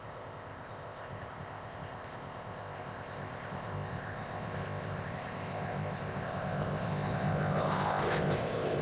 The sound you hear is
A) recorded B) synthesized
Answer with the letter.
B